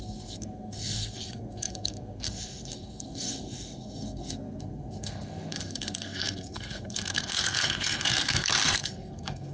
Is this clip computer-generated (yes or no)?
yes